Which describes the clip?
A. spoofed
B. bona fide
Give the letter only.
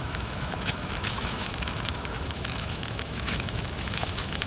A